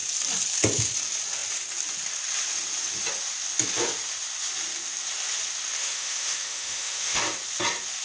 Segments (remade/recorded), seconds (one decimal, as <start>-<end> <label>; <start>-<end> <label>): 0.0-5.8 recorded; 5.8-7.2 remade; 7.2-8.0 recorded

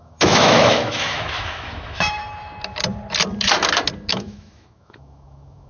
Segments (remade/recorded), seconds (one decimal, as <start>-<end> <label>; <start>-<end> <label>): 0.0-2.2 remade; 2.2-4.1 recorded; 4.1-5.7 remade

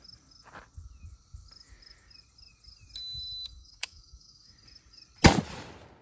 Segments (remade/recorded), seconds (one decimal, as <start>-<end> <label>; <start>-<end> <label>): 0.0-3.6 recorded; 3.6-4.5 remade; 4.5-6.0 recorded

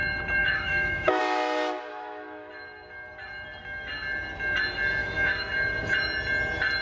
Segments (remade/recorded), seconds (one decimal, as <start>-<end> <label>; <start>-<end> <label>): 0.0-0.4 recorded; 0.4-1.2 remade; 1.2-1.9 recorded; 1.9-2.5 remade; 2.5-5.0 recorded; 5.0-5.5 remade; 5.5-6.8 recorded

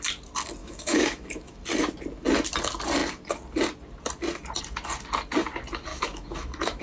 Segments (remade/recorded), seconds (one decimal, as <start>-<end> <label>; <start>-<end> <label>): 0.0-0.6 recorded; 0.6-1.6 remade; 1.6-5.9 recorded; 5.9-6.8 remade

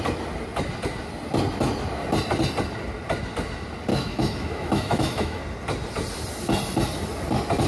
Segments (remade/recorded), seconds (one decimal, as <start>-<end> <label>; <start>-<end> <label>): 0.0-3.9 recorded; 3.9-5.4 remade; 5.4-7.7 recorded